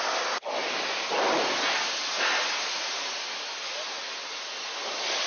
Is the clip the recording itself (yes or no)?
yes